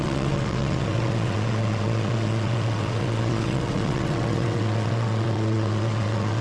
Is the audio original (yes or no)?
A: no